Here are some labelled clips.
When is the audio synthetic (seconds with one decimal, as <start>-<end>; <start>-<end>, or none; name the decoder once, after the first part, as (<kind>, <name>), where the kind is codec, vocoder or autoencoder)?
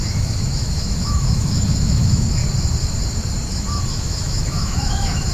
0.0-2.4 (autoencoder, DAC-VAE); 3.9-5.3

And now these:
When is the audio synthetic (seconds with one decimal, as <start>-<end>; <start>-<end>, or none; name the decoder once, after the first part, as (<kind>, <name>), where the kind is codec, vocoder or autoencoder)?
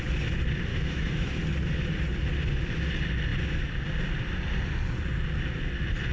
0.7-1.4 (autoencoder, DAC-VAE)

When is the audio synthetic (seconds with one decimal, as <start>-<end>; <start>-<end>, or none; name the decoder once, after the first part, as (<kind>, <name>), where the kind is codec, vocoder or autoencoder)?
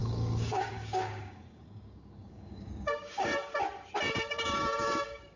0.0-3.3 (codec, DAC); 4.3-5.4